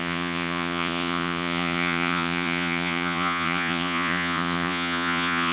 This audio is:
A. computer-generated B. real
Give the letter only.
A